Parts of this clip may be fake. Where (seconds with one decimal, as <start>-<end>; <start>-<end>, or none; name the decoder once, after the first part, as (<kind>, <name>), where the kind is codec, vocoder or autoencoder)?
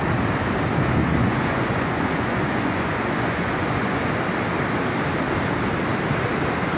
1.0-4.0 (vocoder, Vocos)